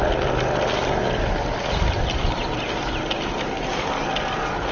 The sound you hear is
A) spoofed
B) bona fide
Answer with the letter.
B